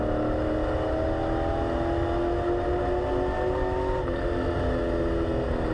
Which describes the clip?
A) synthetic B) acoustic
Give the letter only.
B